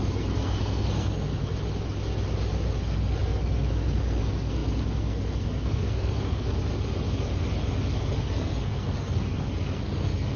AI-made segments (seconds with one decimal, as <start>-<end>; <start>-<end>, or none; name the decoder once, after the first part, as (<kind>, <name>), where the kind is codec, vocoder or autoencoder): 0.0-1.5 (codec, SNAC); 2.8-6.7; 7.9-10.4